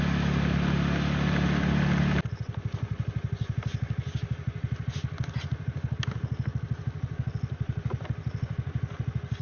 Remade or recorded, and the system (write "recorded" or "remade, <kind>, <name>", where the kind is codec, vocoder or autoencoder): recorded